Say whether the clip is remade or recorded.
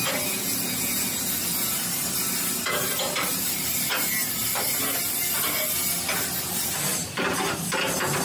recorded